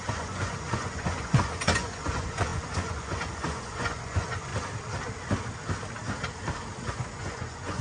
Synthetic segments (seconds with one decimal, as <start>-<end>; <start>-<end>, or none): 0.0-4.5; 6.9-7.8